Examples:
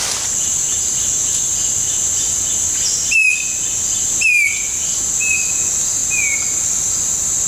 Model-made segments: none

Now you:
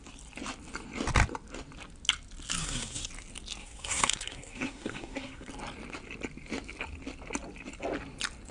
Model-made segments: 2.6-3.1 (codec, SNAC); 3.6-5.5

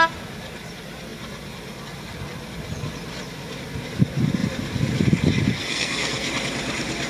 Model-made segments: 5.6-6.3 (codec, SNAC)

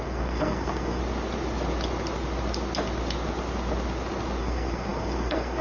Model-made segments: 0.0-1.0 (codec, SNAC); 4.4-5.6

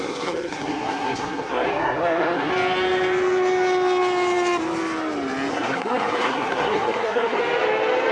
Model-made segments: 0.0-2.5 (codec, SNAC); 5.5-7.4

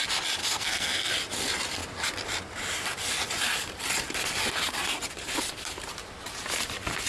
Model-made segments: 0.4-1.1 (codec, SNAC)